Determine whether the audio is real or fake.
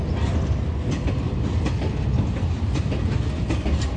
real